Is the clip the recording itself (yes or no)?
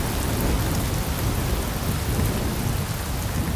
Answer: yes